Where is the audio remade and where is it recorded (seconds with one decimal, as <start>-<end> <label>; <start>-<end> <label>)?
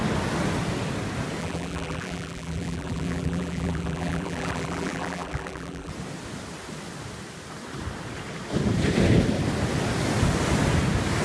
0.0-1.4 recorded; 1.4-5.9 remade; 5.9-11.2 recorded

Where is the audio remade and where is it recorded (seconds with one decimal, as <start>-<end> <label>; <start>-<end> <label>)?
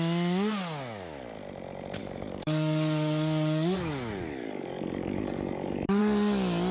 0.0-2.0 recorded; 2.0-6.0 remade; 6.0-6.7 recorded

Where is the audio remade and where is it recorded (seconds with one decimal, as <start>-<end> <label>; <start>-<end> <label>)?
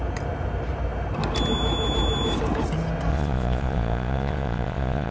0.0-3.1 recorded; 3.1-5.1 remade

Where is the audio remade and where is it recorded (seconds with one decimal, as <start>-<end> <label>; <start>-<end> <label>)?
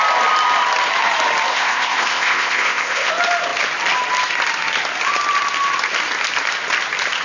0.0-1.5 recorded; 1.5-3.1 remade; 3.1-7.2 recorded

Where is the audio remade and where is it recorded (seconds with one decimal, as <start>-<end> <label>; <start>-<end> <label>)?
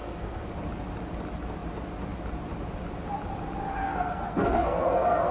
0.0-0.5 remade; 0.5-3.8 recorded; 3.8-5.3 remade